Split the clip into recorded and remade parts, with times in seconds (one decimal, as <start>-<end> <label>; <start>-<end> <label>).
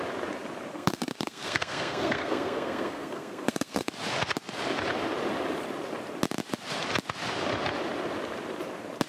0.0-0.7 recorded; 0.7-3.9 remade; 3.9-9.1 recorded